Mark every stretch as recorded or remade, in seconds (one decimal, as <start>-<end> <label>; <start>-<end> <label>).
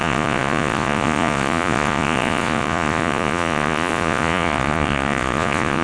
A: 0.0-5.8 remade